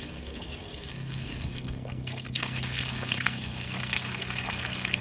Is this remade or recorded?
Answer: remade